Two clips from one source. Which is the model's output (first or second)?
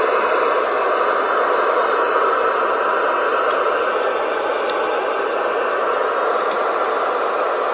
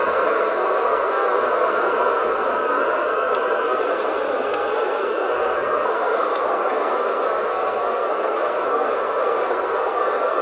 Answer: second